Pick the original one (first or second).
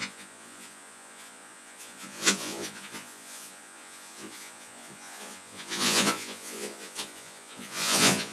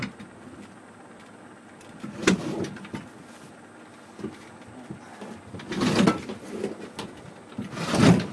second